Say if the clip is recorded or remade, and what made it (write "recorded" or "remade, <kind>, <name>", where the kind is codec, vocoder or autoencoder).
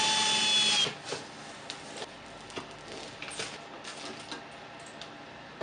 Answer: recorded